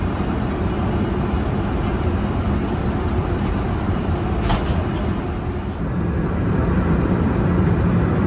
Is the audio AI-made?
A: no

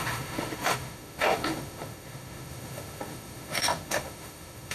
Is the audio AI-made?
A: yes